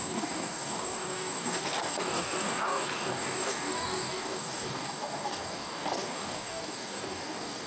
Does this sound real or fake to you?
fake